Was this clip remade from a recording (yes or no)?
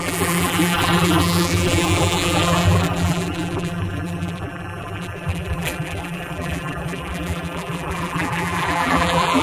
yes